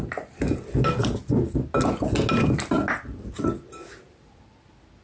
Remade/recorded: recorded